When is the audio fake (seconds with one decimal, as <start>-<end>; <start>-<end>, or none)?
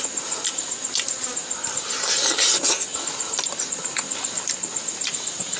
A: none